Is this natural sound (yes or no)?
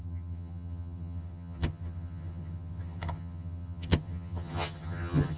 no